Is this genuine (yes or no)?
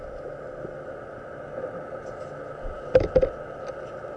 yes